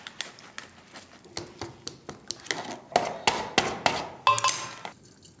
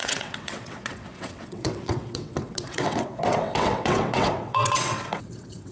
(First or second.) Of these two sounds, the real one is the first